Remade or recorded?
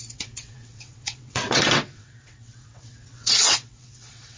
remade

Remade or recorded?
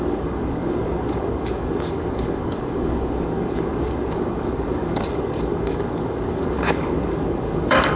remade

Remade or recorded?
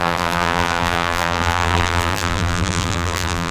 remade